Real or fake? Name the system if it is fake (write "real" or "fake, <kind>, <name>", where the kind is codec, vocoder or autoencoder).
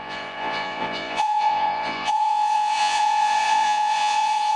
fake, vocoder, Vocos